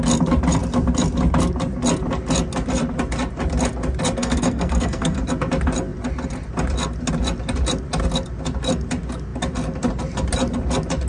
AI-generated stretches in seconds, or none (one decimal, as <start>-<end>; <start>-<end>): 4.2-5.2

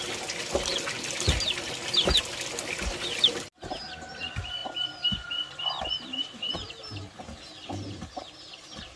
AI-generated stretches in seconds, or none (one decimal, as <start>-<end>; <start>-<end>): none

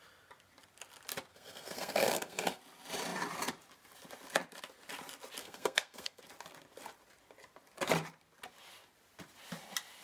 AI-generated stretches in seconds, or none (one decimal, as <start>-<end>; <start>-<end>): 1.3-2.6; 5.4-6.2